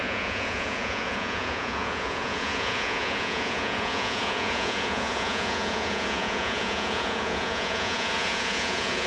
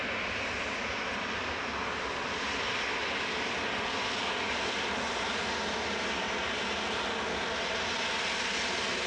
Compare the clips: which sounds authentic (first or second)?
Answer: second